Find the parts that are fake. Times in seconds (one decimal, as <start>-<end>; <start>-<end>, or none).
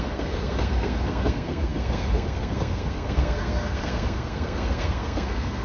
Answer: 0.0-5.6